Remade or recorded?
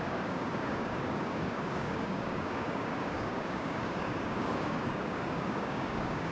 remade